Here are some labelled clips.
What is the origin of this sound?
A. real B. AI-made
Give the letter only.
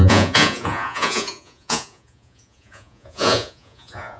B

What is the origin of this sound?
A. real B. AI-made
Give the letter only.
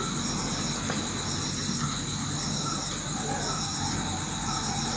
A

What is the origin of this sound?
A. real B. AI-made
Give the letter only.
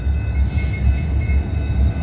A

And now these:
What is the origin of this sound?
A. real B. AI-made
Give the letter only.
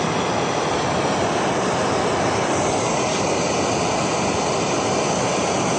A